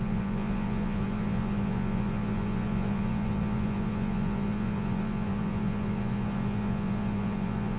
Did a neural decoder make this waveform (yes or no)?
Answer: yes